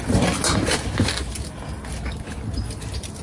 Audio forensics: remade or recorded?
recorded